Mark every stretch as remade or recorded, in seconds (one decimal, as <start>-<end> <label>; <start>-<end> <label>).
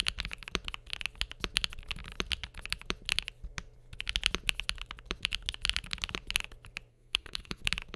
0.0-6.9 recorded; 6.9-7.6 remade; 7.6-8.0 recorded